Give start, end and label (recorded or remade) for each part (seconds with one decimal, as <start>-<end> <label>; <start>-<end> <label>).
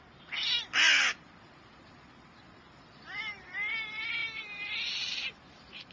0.0-5.9 recorded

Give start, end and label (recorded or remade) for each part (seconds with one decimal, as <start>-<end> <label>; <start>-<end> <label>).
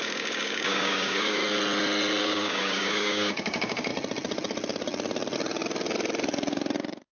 0.0-1.4 remade; 1.4-2.2 recorded; 2.2-3.9 remade; 3.9-7.1 recorded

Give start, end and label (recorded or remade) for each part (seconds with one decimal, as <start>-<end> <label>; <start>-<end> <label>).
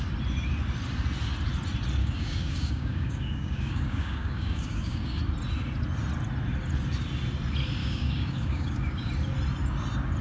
0.0-2.0 recorded; 2.0-5.2 remade; 5.2-7.8 recorded; 7.8-9.1 remade; 9.1-10.2 recorded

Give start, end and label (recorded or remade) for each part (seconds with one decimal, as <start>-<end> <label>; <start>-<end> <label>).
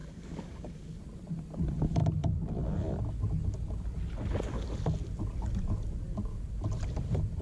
0.0-1.0 remade; 1.0-7.4 recorded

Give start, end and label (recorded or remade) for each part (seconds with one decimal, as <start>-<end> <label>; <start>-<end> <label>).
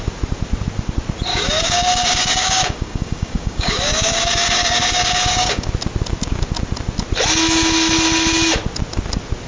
0.0-1.3 recorded; 1.3-5.7 remade; 5.7-9.5 recorded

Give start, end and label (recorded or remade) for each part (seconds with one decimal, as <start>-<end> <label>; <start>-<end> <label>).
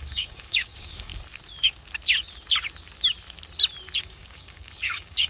0.0-1.1 remade; 1.1-4.0 recorded; 4.0-5.3 remade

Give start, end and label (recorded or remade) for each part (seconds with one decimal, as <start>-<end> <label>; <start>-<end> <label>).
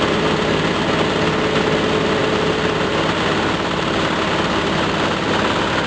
0.0-5.9 recorded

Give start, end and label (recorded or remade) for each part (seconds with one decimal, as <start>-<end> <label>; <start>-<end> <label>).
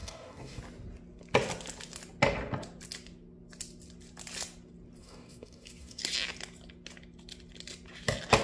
0.0-0.6 remade; 0.6-5.0 recorded; 5.0-6.0 remade; 6.0-8.4 recorded